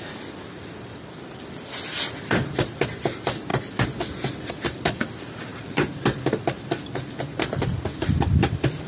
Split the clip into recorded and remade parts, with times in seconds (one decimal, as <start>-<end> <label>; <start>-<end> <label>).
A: 0.0-3.5 remade; 3.5-4.5 recorded; 4.5-8.9 remade